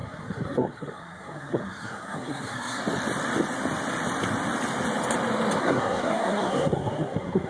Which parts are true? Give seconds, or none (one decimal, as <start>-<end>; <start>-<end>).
2.8-5.6